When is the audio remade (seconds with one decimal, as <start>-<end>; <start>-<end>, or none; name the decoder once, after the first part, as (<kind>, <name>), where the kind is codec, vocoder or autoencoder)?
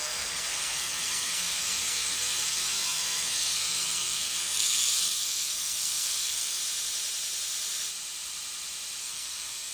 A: 0.0-6.6 (codec, SNAC); 9.0-9.7